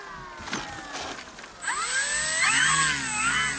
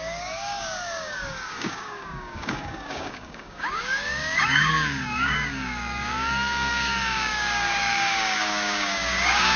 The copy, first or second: second